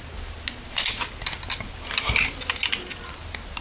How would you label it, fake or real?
real